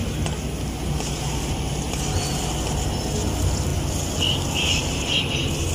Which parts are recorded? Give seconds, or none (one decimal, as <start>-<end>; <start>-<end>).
2.7-5.7

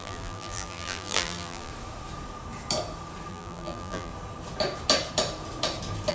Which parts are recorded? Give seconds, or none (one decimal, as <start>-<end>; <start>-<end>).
1.7-3.3; 4.1-6.1

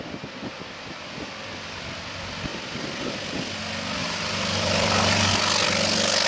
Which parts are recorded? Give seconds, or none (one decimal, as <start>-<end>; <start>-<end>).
0.0-4.0; 5.3-6.3

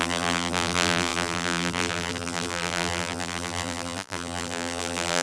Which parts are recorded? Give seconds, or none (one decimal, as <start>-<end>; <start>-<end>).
none

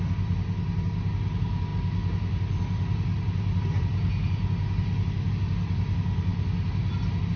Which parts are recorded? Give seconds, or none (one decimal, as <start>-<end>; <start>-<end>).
0.0-7.4

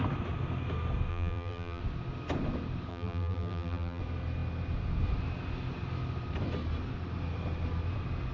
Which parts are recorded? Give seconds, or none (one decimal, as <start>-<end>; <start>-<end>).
0.0-1.1; 1.8-2.9; 4.0-8.3

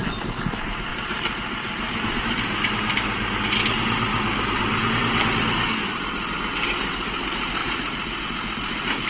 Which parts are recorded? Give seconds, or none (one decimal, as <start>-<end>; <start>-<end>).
0.0-0.9; 2.2-7.6; 8.2-9.1